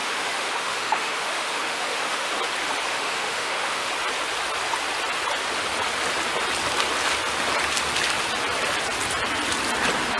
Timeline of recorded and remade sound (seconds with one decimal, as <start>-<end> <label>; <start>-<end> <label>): 0.0-2.3 remade; 2.3-2.9 recorded; 2.9-3.9 remade; 3.9-10.2 recorded